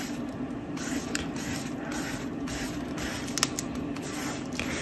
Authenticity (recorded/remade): recorded